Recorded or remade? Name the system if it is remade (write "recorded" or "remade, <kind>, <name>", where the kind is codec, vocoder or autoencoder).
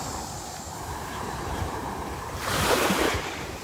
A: remade, vocoder, BigVGAN v2